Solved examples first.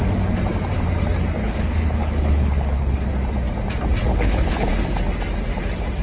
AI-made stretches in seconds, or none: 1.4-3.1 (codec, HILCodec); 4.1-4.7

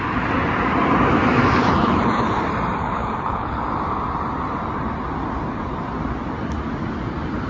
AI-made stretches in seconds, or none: 1.6-2.4 (codec, HILCodec); 2.8-3.6

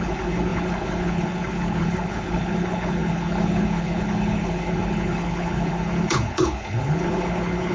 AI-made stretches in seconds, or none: 0.0-7.7 (codec, HILCodec)

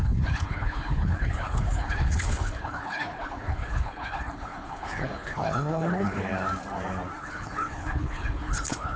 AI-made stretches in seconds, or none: 0.0-6.3 (codec, HILCodec); 7.2-9.0

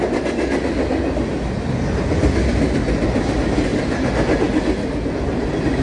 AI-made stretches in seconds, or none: none

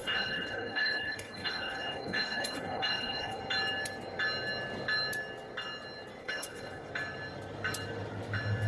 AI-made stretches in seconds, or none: 0.0-3.4 (codec, HILCodec); 6.2-6.9